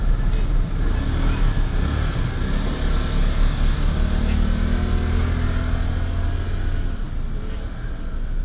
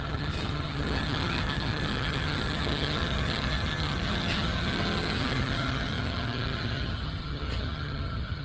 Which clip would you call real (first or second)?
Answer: first